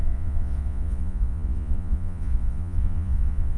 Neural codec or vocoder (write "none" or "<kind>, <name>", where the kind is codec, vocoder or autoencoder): vocoder, Vocos